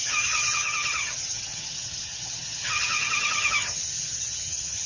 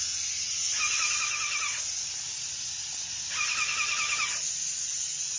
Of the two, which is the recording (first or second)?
second